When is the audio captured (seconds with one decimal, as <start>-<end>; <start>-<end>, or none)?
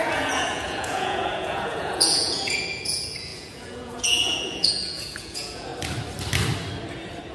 5.7-7.3